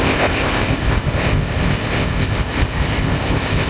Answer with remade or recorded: remade